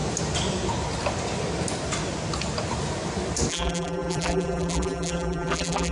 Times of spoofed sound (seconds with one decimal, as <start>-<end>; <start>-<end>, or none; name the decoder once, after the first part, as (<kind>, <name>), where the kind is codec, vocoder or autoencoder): 3.5-5.9 (vocoder, BigVGAN v2)